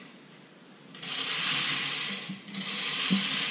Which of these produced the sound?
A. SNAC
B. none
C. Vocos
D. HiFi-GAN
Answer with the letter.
B